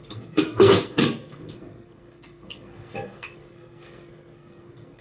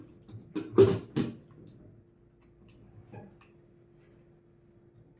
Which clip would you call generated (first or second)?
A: first